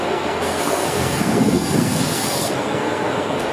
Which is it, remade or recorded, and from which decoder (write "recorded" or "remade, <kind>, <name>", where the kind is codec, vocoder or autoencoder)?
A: remade, codec, SNAC